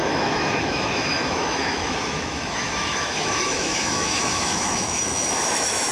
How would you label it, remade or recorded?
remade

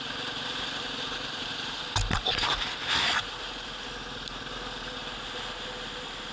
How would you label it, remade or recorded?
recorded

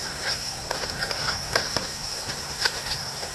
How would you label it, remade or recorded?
remade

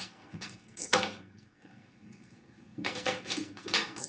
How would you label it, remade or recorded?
remade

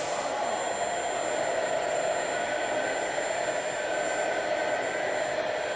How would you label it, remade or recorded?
recorded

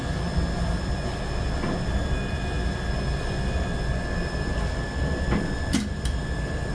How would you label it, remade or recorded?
recorded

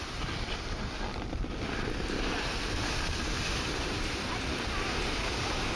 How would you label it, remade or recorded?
recorded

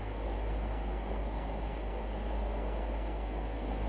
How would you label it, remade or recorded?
remade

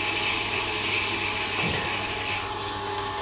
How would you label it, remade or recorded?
recorded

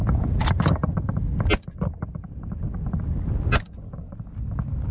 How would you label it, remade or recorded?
recorded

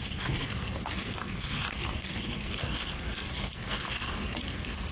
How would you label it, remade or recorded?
remade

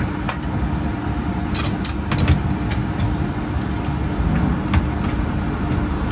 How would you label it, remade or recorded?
recorded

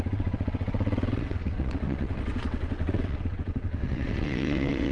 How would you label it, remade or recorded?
remade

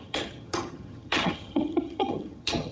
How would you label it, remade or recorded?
remade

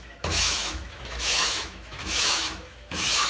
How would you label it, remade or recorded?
remade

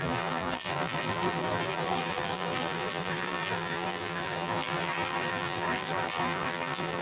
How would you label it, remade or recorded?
remade